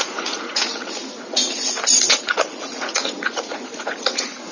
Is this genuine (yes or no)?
no